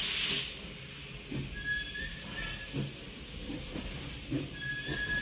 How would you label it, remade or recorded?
recorded